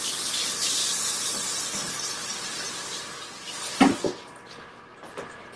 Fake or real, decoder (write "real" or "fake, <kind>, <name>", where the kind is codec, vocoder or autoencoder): real